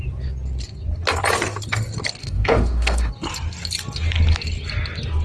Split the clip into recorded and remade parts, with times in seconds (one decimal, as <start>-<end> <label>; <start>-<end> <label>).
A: 0.0-2.2 recorded; 2.2-3.1 remade; 3.1-5.2 recorded

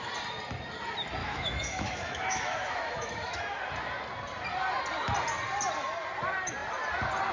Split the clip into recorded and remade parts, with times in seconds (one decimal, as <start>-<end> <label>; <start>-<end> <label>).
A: 0.0-1.2 recorded; 1.2-3.4 remade; 3.4-7.3 recorded

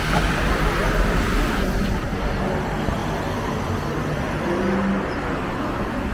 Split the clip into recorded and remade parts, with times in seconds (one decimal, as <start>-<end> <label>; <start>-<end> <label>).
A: 0.0-6.1 recorded

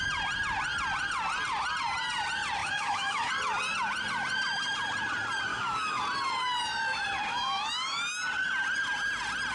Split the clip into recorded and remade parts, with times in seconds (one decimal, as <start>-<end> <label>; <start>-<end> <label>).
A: 0.0-2.6 recorded; 2.6-3.3 remade; 3.3-5.5 recorded; 5.5-6.0 remade; 6.0-7.3 recorded; 7.3-8.0 remade; 8.0-9.5 recorded

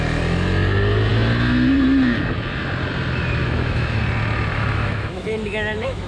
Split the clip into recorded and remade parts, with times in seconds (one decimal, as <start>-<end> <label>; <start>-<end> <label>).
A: 0.0-3.4 recorded; 3.4-4.0 remade; 4.0-4.5 recorded; 4.5-6.1 remade

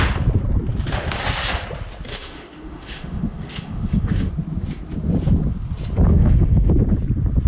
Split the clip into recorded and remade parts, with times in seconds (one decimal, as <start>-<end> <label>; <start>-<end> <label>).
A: 0.0-2.1 recorded; 2.1-4.3 remade; 4.3-6.1 recorded; 6.1-6.7 remade; 6.7-7.5 recorded